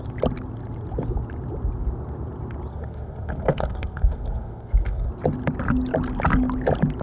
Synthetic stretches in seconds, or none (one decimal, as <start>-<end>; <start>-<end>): 2.7-5.1